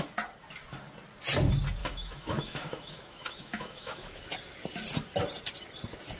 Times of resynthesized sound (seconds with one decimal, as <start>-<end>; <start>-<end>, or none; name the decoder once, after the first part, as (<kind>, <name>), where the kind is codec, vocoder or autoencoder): 1.8-4.2 (autoencoder, DAC-VAE)